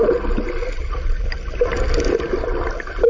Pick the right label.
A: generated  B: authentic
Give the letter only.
B